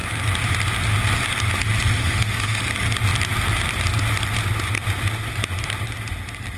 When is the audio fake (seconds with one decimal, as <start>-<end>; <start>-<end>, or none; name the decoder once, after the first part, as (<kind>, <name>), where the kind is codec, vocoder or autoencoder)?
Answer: 2.0-2.6 (autoencoder, DAC-VAE)